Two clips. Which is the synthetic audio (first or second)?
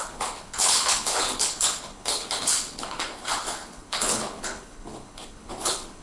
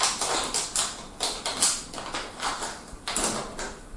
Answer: first